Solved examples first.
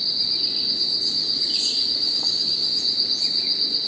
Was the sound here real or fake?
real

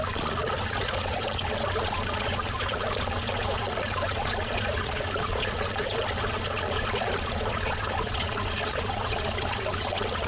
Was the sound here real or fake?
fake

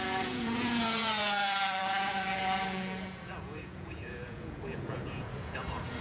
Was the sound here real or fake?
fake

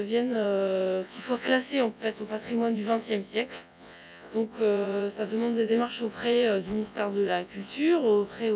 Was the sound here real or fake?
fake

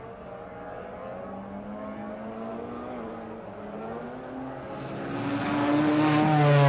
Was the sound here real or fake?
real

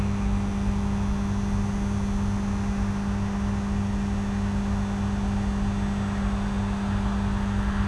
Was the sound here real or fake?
real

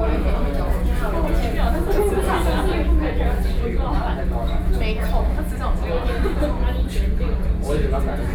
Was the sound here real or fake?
real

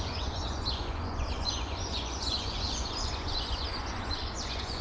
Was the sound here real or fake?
fake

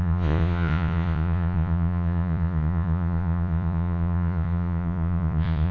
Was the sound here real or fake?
fake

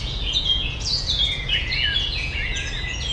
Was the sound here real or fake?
fake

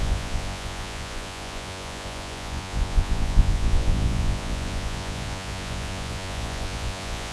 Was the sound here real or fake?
fake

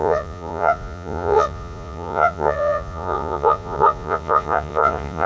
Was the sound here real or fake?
fake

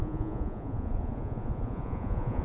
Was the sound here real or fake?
fake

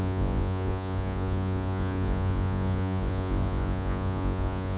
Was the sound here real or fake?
fake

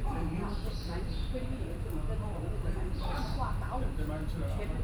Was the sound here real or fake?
real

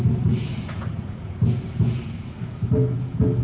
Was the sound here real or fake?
fake